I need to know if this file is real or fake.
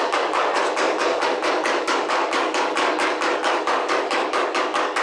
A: fake